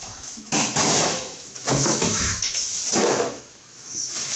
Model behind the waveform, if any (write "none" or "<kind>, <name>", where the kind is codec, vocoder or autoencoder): autoencoder, DAC-VAE